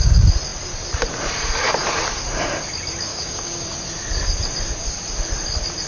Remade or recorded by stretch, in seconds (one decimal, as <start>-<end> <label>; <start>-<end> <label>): 0.0-3.1 recorded; 3.1-3.7 remade; 3.7-5.9 recorded